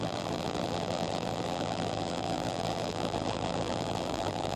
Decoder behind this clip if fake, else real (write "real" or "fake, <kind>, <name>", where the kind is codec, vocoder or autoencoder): fake, vocoder, BigVGAN v2